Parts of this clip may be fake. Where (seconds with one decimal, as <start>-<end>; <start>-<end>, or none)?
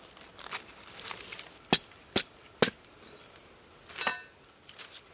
none